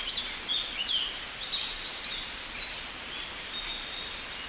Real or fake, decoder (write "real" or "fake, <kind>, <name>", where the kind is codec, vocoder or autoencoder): real